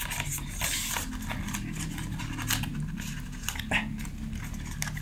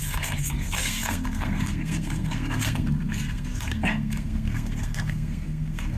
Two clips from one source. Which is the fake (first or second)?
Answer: second